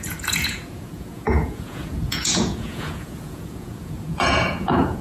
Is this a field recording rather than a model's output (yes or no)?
no